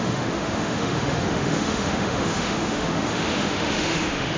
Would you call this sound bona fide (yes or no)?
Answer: no